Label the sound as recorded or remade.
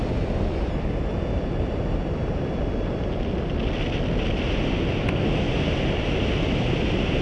recorded